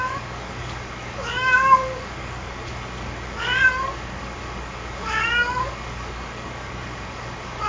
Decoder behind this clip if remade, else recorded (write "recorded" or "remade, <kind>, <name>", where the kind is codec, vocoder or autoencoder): remade, codec, DAC